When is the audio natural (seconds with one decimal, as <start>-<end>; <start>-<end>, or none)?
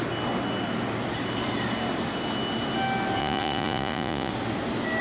0.0-3.2; 4.3-5.0